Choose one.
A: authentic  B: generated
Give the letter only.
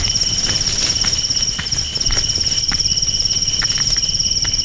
A